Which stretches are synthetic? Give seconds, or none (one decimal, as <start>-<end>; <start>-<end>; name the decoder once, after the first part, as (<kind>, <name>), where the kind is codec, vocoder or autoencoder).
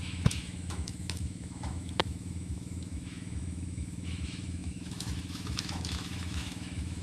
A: 0.0-7.0 (autoencoder, DAC-VAE)